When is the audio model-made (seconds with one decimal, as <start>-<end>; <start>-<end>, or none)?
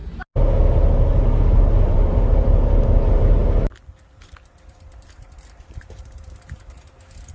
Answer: 1.5-3.4; 4.7-7.3